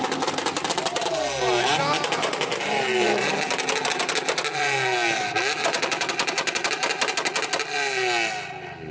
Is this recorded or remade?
recorded